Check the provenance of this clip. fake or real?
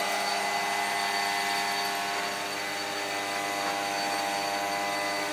real